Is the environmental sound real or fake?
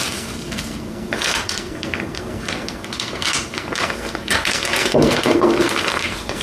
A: fake